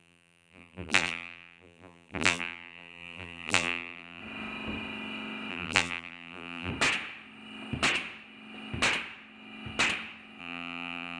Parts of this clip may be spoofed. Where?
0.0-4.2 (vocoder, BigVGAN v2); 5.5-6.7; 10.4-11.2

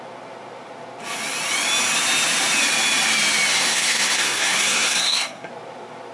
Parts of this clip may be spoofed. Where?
3.6-5.5 (codec, SNAC)

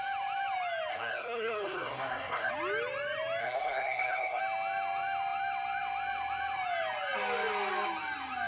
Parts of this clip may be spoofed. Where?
0.9-2.5 (codec, SNAC); 3.4-4.4

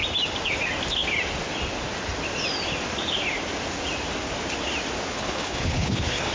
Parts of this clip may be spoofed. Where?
5.1-6.3 (codec, HILCodec)

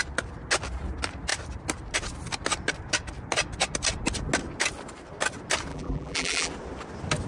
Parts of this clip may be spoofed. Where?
5.7-6.5 (vocoder, BigVGAN v2)